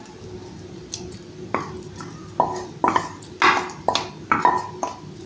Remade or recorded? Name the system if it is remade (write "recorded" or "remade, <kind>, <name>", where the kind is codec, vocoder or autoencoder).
recorded